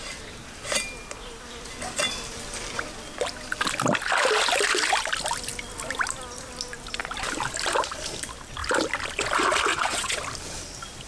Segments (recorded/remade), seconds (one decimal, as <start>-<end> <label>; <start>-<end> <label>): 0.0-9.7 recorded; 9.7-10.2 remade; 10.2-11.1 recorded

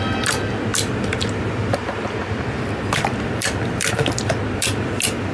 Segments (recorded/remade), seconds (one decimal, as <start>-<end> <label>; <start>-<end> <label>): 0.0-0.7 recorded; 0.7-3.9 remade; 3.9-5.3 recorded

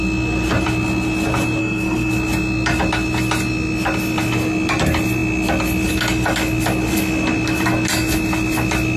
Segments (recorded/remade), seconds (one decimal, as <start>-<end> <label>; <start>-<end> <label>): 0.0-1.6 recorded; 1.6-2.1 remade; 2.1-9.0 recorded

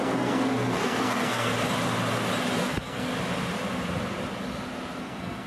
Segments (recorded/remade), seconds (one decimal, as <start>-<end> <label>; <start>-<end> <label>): 0.0-1.5 remade; 1.5-2.6 recorded; 2.6-3.1 remade; 3.1-5.0 recorded; 5.0-5.5 remade